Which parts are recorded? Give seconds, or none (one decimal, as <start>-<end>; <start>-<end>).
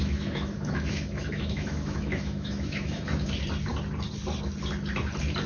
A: 3.3-5.5